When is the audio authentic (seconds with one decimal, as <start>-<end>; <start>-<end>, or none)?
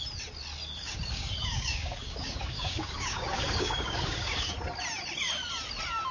0.0-0.8; 4.5-6.1